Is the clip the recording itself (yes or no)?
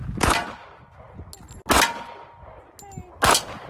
yes